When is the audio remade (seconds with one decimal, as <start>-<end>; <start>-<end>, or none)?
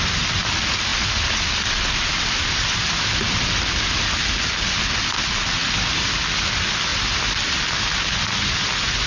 none